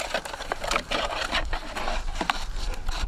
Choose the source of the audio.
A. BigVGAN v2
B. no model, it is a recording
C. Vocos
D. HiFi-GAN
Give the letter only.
A